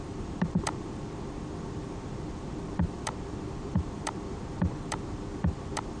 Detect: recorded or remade remade